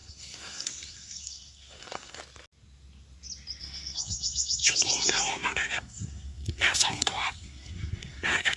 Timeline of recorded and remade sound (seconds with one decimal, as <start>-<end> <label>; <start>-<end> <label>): 0.0-2.2 remade; 2.2-3.6 recorded; 3.6-8.6 remade